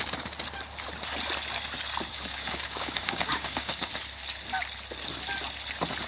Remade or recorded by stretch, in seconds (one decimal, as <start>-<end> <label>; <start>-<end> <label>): 0.0-2.1 recorded; 2.1-3.9 remade; 3.9-6.1 recorded